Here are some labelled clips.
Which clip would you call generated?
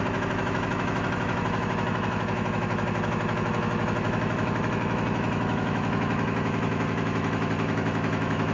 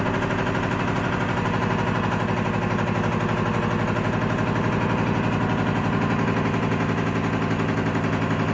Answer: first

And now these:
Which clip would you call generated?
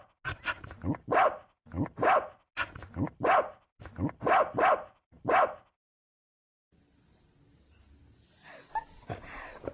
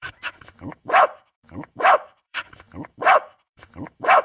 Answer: second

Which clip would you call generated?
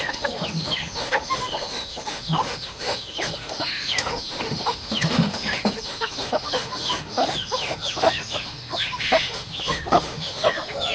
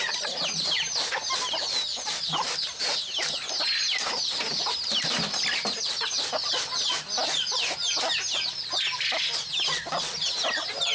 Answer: first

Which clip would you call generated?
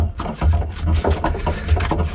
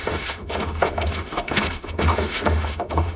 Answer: second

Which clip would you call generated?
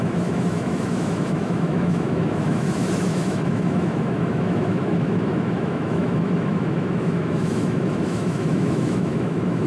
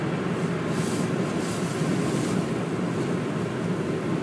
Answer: first